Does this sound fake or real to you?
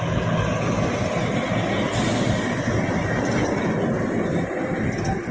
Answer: real